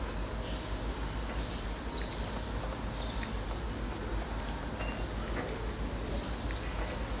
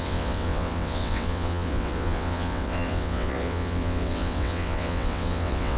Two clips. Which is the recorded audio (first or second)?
first